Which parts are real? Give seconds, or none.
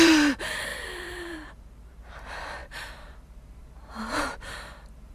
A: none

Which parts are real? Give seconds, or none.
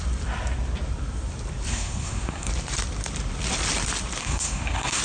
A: 0.0-1.7; 2.5-4.2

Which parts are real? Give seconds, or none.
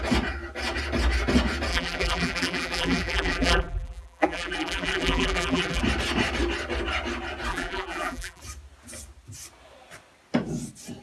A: 0.0-1.7; 5.8-7.5; 8.4-11.0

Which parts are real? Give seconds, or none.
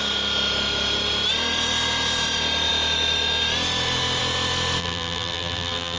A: 0.0-4.8